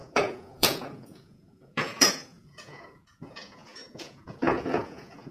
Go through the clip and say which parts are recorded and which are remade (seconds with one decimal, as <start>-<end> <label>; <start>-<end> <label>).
0.0-5.3 remade